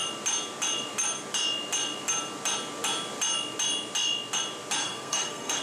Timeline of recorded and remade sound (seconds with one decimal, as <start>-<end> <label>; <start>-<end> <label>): 0.0-4.8 recorded; 4.8-5.6 remade